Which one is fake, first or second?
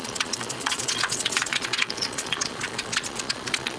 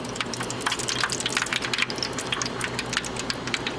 first